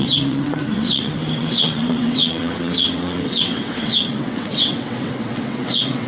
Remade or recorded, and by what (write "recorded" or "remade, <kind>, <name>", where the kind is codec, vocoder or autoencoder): remade, vocoder, WaveNeXt